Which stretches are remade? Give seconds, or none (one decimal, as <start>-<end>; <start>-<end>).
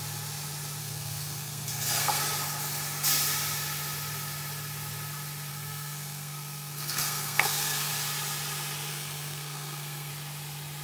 0.8-2.2; 5.5-7.9; 8.9-10.1